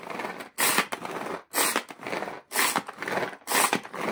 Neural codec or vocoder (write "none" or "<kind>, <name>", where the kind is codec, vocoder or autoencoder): none